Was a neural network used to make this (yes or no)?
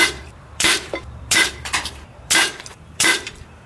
yes